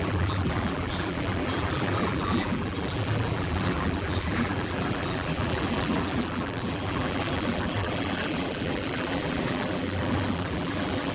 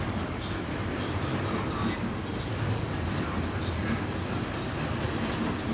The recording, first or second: second